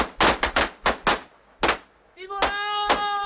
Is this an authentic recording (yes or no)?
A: yes